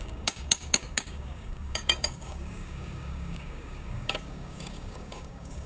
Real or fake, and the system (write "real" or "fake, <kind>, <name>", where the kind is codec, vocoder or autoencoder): fake, codec, DAC